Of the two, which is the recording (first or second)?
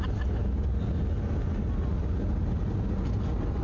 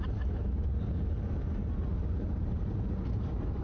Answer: first